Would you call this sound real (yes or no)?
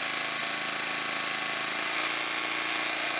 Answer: yes